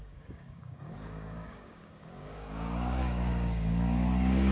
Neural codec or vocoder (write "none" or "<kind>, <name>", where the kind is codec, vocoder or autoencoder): codec, DAC